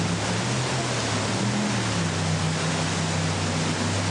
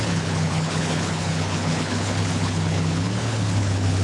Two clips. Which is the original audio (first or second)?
first